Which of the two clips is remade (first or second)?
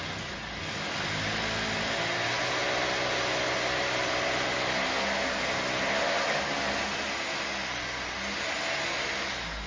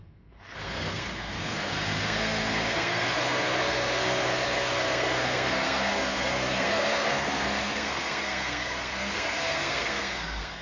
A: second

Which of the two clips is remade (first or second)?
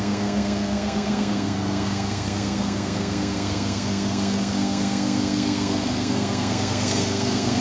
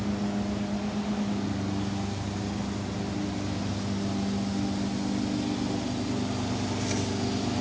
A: first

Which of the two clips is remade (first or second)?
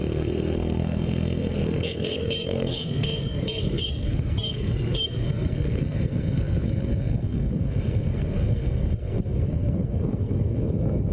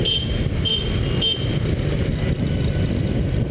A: first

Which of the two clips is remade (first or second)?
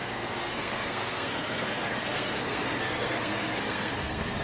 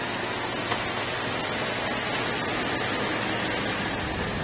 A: first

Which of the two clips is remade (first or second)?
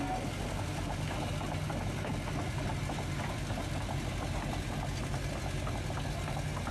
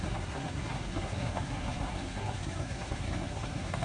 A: second